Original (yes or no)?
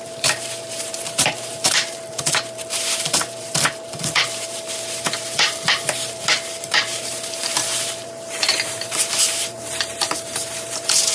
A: no